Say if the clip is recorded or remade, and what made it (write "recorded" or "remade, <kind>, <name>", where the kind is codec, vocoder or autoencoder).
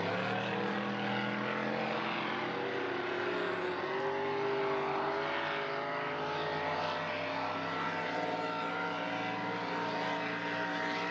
recorded